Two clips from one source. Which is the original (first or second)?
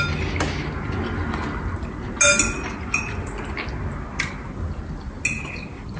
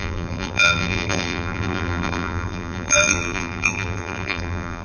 first